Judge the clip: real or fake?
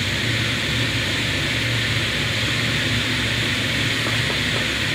real